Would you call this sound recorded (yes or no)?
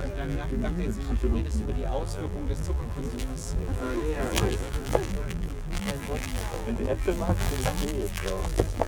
no